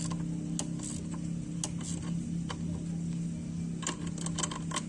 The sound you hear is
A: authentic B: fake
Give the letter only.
A